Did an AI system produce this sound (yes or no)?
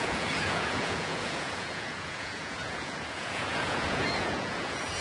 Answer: yes